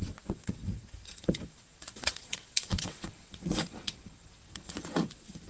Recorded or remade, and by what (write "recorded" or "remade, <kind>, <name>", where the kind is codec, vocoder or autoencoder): remade, vocoder, WaveNeXt